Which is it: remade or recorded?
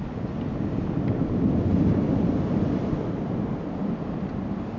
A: recorded